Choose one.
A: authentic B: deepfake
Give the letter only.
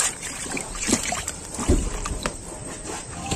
B